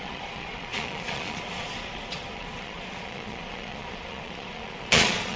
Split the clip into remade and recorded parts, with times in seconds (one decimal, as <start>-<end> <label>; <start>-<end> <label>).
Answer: 0.0-5.4 remade